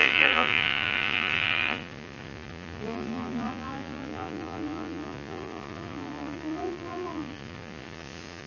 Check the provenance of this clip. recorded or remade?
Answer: remade